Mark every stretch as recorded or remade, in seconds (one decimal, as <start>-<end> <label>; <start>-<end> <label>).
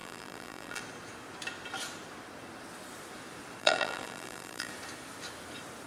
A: 0.0-0.8 remade; 0.8-3.6 recorded; 3.6-4.7 remade; 4.7-5.9 recorded